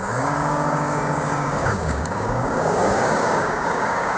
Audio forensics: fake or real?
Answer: fake